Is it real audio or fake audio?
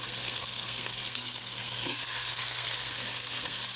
fake